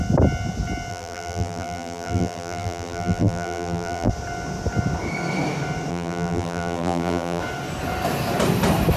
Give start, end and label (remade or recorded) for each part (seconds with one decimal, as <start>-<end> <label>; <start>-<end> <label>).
0.0-0.9 recorded; 0.9-4.1 remade; 4.1-5.9 recorded; 5.9-7.4 remade; 7.4-9.0 recorded